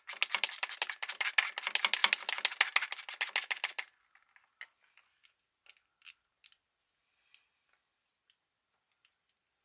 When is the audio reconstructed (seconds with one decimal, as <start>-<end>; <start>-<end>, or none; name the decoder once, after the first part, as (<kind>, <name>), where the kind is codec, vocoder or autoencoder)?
none